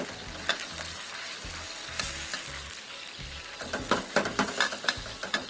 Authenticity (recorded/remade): recorded